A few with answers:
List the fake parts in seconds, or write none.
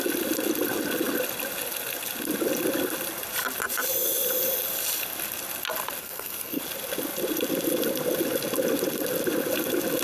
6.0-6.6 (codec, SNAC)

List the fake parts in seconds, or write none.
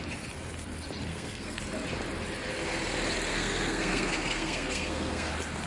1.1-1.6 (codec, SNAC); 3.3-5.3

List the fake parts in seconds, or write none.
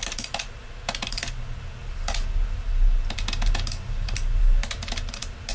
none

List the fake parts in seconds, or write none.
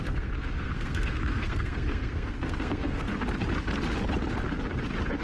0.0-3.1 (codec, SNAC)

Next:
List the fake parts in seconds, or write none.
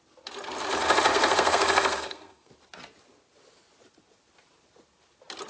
1.1-2.5 (codec, SNAC)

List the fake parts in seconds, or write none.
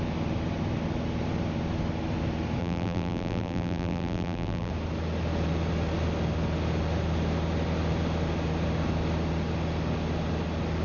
2.6-4.7 (vocoder, BigVGAN v2)